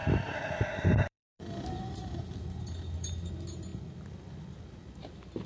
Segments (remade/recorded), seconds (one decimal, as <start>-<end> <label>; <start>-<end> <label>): 0.0-3.3 remade; 3.3-3.7 recorded; 3.7-4.3 remade; 4.3-5.5 recorded